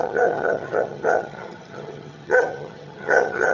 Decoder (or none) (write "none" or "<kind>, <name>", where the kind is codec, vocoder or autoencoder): vocoder, HiFi-GAN